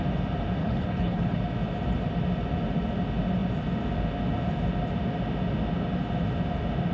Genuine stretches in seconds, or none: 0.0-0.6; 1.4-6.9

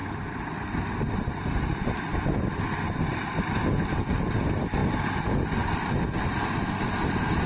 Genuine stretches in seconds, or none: 0.0-7.5

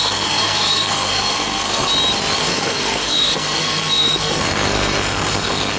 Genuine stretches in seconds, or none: 1.9-2.4

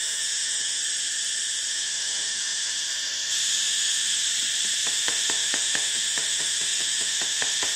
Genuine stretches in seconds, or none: 0.8-1.7; 4.3-4.9

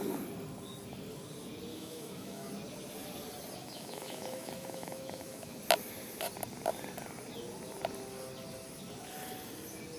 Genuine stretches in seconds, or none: 0.0-1.7; 2.5-3.6; 5.6-10.0

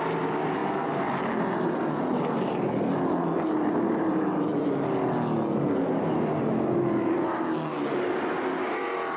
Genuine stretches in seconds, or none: 0.0-9.2